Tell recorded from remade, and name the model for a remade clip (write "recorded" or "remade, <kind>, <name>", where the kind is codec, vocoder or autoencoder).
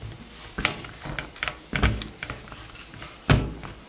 recorded